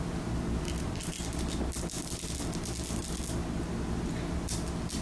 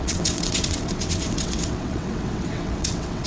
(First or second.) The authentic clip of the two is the first